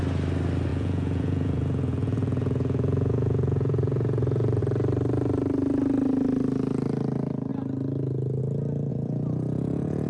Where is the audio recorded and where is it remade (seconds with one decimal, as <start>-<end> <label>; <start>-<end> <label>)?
0.0-0.7 recorded; 0.7-4.6 remade; 4.6-8.9 recorded; 8.9-10.1 remade